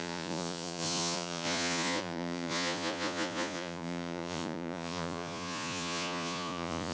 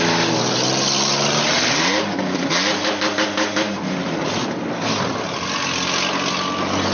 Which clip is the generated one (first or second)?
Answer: first